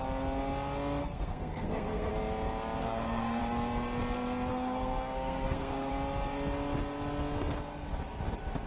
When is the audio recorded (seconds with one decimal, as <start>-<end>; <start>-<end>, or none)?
0.0-1.0; 2.1-2.8; 3.4-4.5; 5.9-8.7